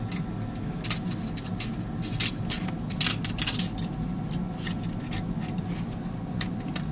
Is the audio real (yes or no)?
yes